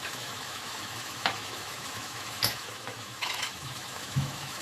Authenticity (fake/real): fake